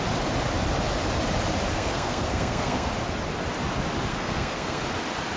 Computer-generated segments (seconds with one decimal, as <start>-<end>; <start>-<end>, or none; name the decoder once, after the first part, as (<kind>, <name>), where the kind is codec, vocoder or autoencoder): 1.7-2.9 (codec, SNAC); 4.1-4.8